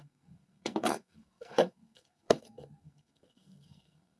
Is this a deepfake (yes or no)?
yes